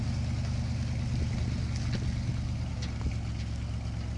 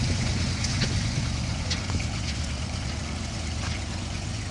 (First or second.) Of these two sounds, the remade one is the second